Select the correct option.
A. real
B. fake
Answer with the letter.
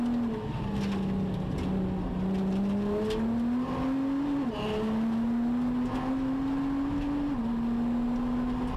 A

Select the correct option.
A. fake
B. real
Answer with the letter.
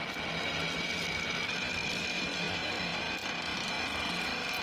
B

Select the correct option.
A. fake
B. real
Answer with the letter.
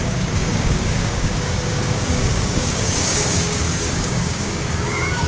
A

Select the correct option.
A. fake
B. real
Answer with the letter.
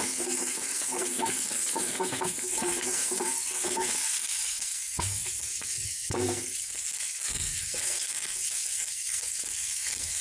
A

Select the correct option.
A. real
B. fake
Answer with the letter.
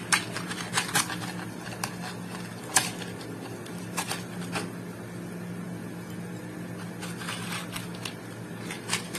A